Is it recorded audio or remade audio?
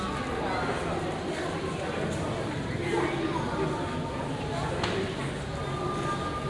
recorded